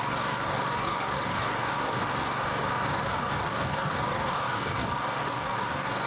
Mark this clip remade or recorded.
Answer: remade